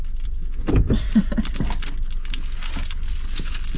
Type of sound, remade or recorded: recorded